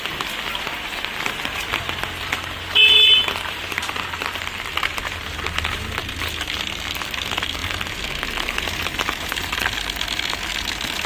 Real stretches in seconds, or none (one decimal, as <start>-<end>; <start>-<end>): 0.0-11.1